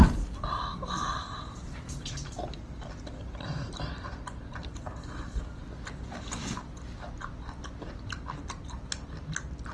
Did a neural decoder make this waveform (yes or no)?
yes